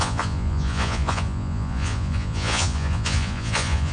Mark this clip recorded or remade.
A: remade